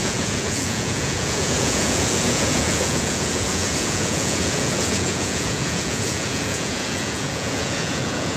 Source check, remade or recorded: remade